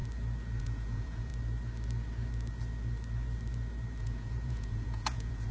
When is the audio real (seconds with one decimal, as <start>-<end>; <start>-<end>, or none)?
0.0-0.6; 1.3-4.0